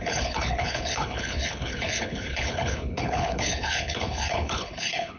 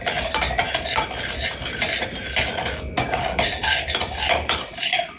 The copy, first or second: first